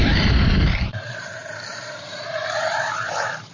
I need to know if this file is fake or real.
fake